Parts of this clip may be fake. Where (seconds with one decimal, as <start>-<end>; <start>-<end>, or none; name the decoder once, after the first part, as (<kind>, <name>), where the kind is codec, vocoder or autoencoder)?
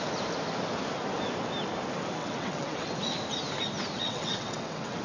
2.2-2.9 (vocoder, WaveNeXt); 4.0-5.0